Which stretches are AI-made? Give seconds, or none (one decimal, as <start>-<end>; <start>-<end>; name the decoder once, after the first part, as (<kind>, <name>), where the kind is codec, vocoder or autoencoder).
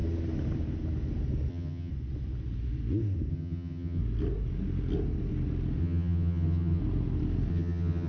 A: 1.5-1.9 (vocoder, HiFi-GAN); 3.3-4.0; 5.8-6.8; 7.5-8.1